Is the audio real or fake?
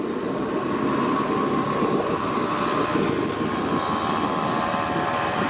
real